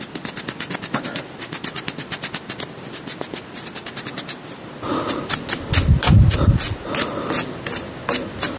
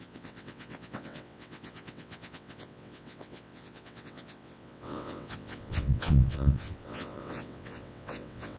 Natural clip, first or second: first